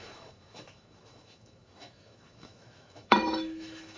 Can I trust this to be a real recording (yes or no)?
no